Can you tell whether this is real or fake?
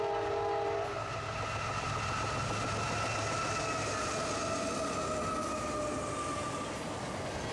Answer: real